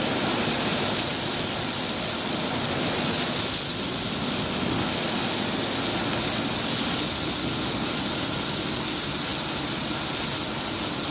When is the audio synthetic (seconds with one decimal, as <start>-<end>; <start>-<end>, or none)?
none